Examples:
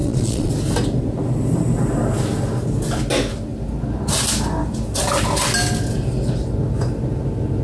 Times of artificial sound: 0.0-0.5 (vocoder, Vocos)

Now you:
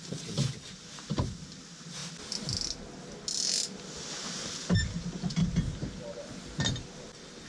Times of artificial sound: none

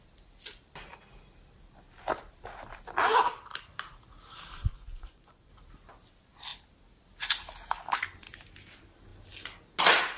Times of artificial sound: 4.7-5.5 (vocoder, Vocos)

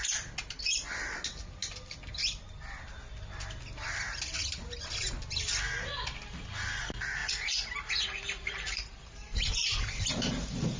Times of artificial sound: 7.2-10.8 (vocoder, BigVGAN v2)

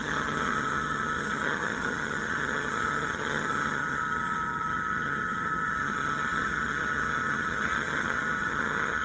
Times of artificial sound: 0.0-9.0 (vocoder, HiFi-GAN)

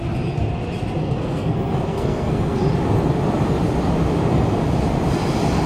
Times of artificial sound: 1.0-2.7 (codec, SNAC)

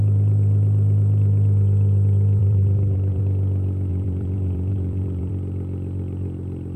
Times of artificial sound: 2.4-3.2 (vocoder, BigVGAN v2); 3.9-5.3